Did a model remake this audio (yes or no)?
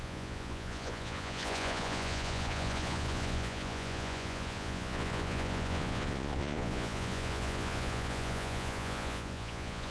yes